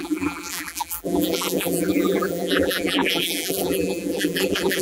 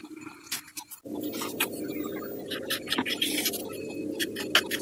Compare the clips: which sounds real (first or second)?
second